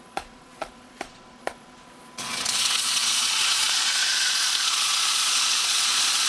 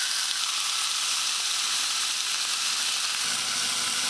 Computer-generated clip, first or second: first